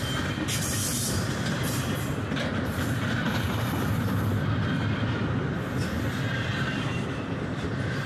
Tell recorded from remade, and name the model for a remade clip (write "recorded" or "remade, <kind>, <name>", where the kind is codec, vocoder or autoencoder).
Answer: remade, vocoder, BigVGAN v2